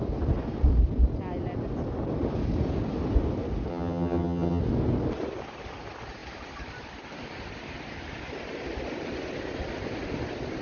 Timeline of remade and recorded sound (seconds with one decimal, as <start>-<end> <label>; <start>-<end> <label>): 0.0-3.7 recorded; 3.7-4.6 remade; 4.6-10.6 recorded